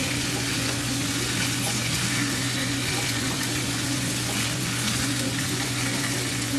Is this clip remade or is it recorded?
remade